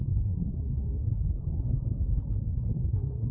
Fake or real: fake